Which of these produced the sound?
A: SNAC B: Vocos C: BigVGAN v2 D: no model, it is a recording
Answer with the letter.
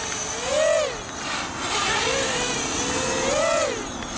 D